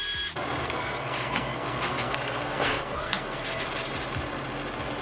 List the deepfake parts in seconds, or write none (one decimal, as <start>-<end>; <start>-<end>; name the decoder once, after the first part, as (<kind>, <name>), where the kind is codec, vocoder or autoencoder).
0.6-3.6 (codec, SNAC)